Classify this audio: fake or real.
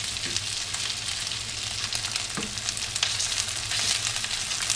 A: real